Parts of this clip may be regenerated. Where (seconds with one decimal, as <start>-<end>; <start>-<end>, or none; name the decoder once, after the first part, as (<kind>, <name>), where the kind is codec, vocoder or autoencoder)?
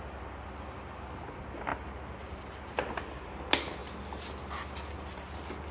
none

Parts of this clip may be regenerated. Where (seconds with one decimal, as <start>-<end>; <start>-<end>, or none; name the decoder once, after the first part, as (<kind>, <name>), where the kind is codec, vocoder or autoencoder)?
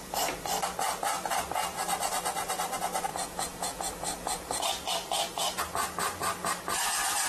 3.1-3.8 (vocoder, Vocos)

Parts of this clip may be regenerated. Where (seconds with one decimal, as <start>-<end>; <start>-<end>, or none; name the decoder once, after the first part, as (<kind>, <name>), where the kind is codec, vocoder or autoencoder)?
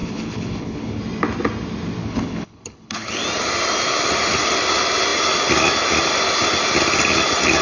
0.0-1.0 (codec, HILCodec); 2.0-3.1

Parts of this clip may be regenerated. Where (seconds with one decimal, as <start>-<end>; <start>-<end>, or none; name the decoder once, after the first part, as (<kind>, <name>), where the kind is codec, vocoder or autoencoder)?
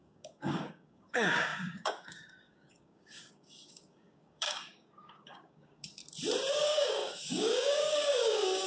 0.0-6.0 (codec, DAC); 6.5-8.7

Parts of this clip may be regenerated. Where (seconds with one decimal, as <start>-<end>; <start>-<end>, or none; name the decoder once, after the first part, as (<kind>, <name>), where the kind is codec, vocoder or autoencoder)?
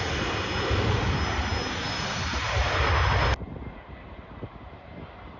none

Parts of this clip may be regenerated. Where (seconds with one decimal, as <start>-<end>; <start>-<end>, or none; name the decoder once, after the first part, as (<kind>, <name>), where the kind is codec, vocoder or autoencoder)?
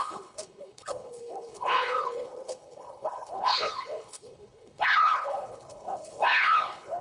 0.0-7.0 (codec, HILCodec)